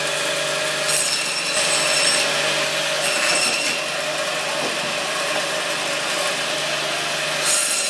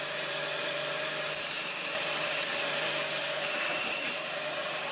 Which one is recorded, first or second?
first